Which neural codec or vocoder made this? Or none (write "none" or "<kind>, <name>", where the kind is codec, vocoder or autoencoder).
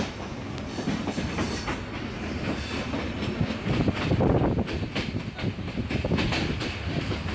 none